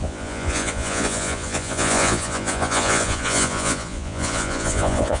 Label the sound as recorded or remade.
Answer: remade